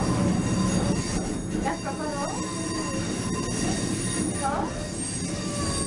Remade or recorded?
recorded